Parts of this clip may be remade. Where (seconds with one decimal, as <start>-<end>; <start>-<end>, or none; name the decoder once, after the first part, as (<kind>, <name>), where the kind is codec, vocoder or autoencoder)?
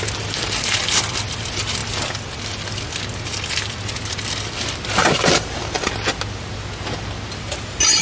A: 5.0-5.9 (vocoder, BigVGAN v2)